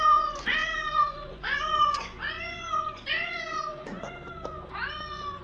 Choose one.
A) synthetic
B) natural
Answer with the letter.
A